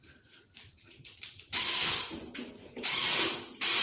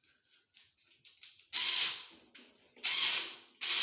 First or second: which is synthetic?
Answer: first